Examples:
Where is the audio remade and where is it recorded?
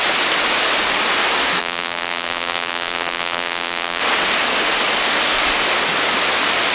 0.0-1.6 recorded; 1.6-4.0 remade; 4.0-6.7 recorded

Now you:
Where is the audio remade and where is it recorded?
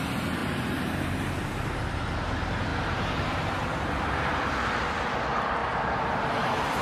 0.0-0.4 recorded; 0.4-1.8 remade; 1.8-2.7 recorded; 2.7-3.9 remade; 3.9-5.6 recorded; 5.6-6.8 remade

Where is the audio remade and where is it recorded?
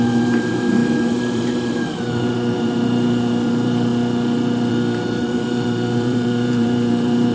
0.0-3.9 remade; 3.9-4.7 recorded; 4.7-7.3 remade